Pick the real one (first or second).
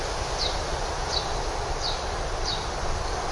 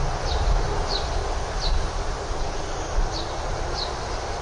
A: second